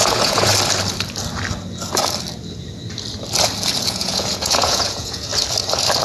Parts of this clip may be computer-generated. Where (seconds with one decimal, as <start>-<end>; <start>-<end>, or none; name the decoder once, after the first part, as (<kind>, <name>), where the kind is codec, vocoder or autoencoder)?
0.0-0.5 (vocoder, Vocos); 3.8-5.3